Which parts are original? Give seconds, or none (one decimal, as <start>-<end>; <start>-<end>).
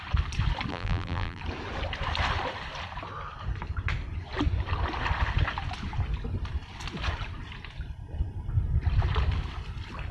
0.0-0.7; 1.4-10.1